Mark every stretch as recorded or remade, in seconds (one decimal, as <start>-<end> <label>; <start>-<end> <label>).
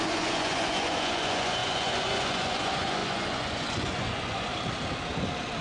0.0-4.5 remade; 4.5-5.6 recorded